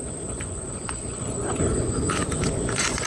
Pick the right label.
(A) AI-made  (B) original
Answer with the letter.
A